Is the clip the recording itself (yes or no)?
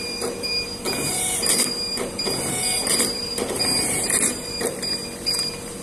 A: no